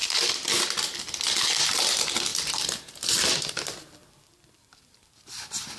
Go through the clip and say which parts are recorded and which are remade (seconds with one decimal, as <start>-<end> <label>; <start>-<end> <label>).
0.0-0.6 remade; 0.6-2.3 recorded; 2.3-5.1 remade; 5.1-5.8 recorded